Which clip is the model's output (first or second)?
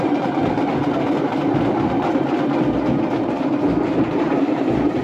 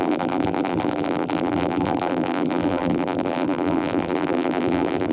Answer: second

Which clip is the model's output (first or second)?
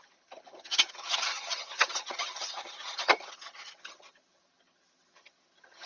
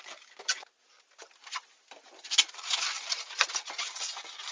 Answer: first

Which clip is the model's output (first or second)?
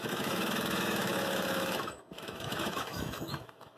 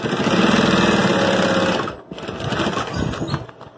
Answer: first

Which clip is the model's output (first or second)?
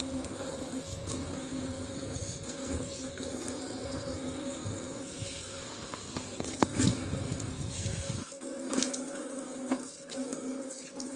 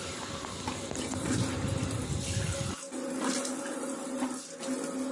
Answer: first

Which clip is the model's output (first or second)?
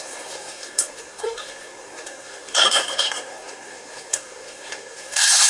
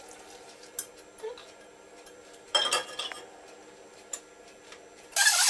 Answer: first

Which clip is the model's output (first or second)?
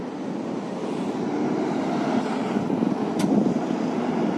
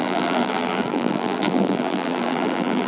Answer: second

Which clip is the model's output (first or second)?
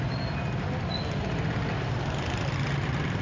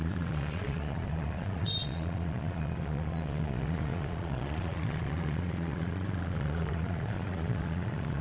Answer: second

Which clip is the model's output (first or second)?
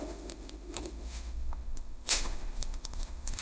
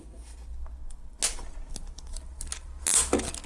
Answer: first